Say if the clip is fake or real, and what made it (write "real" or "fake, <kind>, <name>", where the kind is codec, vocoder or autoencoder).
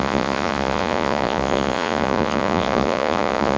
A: fake, vocoder, Vocos